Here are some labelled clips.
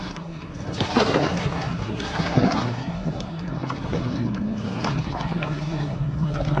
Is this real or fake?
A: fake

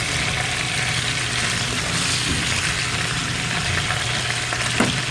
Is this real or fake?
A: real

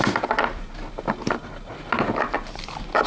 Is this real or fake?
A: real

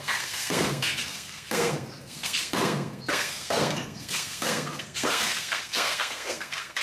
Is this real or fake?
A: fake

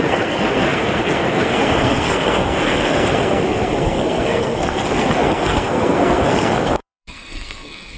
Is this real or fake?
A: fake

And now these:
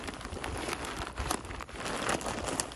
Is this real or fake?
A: real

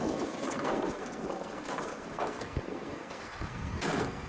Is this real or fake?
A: fake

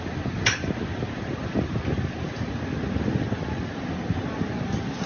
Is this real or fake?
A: real